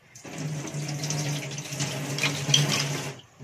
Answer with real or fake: real